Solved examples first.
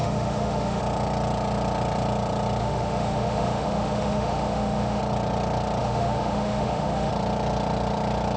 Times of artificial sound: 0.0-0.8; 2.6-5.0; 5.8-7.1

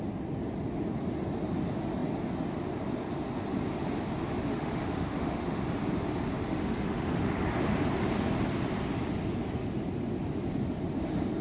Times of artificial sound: 4.5-5.6; 6.5-7.5

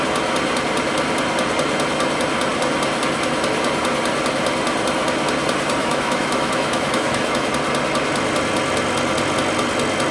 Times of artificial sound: 5.8-7.5

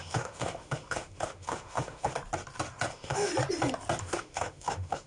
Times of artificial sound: 0.0-2.1; 2.9-3.3; 4.0-5.1

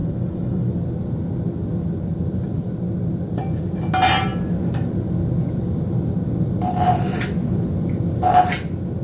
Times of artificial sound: 0.0-0.7